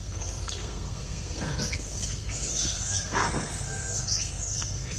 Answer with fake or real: fake